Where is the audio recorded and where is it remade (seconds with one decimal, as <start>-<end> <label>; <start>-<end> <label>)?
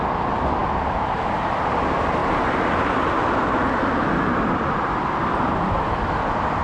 0.0-2.2 recorded; 2.2-6.6 remade